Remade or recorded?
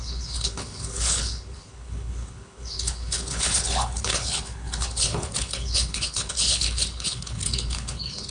remade